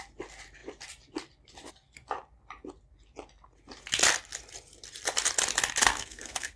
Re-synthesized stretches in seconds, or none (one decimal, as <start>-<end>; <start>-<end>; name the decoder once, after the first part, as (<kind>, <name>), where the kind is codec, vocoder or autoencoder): 5.8-6.6 (codec, SNAC)